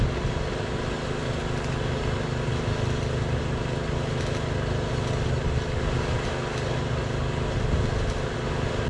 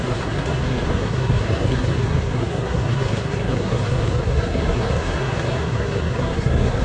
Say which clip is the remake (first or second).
second